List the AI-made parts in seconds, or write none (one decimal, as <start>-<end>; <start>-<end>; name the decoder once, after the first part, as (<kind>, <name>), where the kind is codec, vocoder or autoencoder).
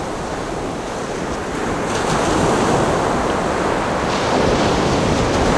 none